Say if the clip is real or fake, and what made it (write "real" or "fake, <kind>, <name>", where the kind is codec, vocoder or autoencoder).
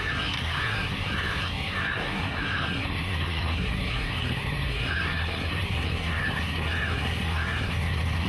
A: fake, codec, SNAC